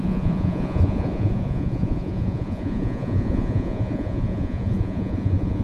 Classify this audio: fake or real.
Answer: fake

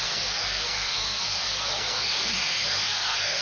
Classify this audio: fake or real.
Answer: fake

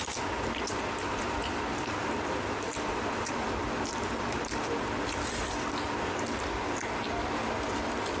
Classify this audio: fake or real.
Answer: real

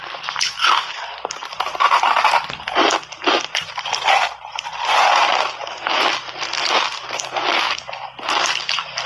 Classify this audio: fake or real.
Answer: real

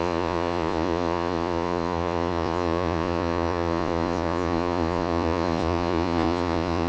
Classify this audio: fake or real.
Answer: fake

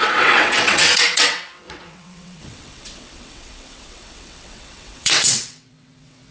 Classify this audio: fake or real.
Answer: fake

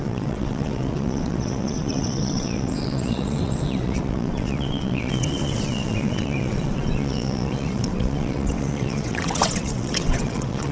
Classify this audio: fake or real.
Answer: fake